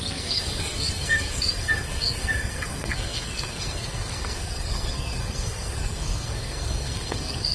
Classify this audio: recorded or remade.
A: remade